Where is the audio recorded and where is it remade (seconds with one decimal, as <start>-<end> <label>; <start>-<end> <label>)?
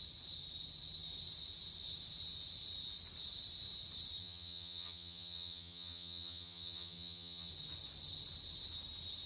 0.0-4.2 recorded; 4.2-7.5 remade; 7.5-9.3 recorded